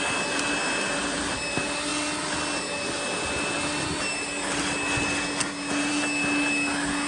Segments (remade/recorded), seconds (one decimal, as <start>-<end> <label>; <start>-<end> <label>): 0.0-7.1 recorded